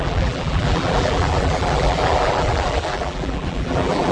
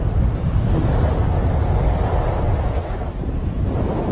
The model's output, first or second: first